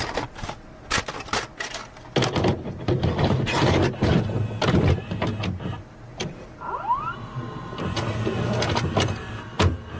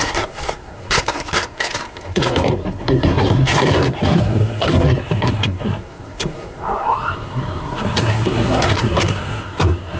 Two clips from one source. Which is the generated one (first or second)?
second